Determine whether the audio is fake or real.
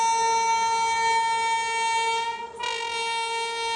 real